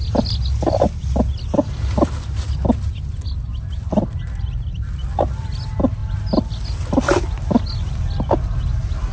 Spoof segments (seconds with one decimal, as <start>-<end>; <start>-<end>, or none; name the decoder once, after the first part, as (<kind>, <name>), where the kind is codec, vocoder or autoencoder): none